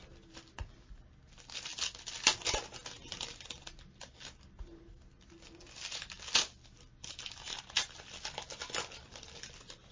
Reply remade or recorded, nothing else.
recorded